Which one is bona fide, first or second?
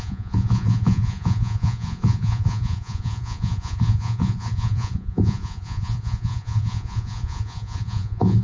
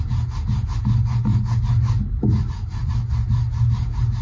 second